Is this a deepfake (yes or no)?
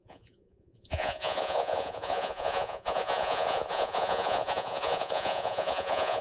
yes